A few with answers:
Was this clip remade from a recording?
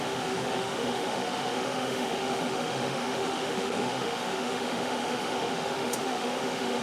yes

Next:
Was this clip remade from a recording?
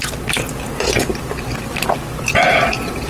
no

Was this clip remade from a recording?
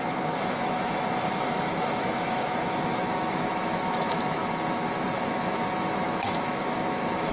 yes